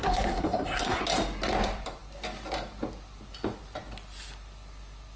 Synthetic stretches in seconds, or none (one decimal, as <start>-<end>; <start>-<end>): 0.0-1.0